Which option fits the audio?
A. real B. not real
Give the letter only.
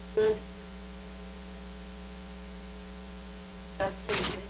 B